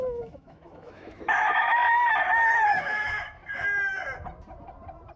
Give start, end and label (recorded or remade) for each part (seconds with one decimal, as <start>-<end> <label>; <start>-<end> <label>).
0.0-1.8 remade; 1.8-2.8 recorded; 2.8-3.4 remade; 3.4-5.2 recorded